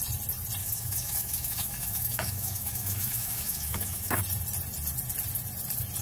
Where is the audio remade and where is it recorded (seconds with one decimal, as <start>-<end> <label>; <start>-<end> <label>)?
0.0-0.6 recorded; 0.6-4.2 remade; 4.2-6.0 recorded